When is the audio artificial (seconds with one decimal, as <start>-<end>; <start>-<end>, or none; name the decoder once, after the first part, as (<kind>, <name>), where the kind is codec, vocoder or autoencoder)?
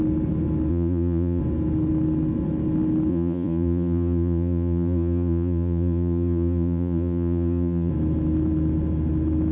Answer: 0.7-1.4 (vocoder, Vocos); 3.1-7.9